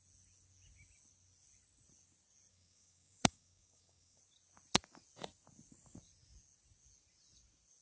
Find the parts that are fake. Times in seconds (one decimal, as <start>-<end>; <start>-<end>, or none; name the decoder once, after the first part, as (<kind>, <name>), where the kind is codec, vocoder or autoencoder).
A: 2.5-4.2 (codec, DAC)